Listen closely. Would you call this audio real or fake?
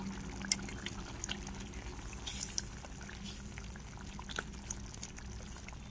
real